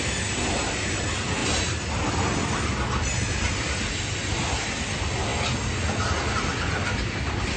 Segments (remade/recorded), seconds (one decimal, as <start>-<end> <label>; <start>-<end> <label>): 0.0-7.6 recorded